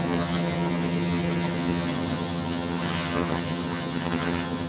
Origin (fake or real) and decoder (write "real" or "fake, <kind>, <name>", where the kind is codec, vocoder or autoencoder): fake, vocoder, HiFi-GAN